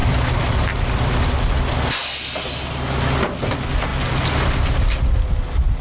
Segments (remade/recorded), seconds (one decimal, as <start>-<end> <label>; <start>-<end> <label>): 0.0-1.3 remade; 1.3-3.9 recorded; 3.9-4.8 remade; 4.8-5.8 recorded